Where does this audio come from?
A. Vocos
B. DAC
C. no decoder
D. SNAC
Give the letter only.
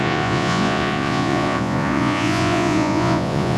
A